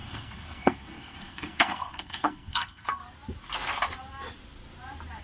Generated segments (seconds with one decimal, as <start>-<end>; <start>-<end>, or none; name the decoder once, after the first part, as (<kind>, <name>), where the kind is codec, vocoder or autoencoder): 0.0-3.0 (codec, SNAC)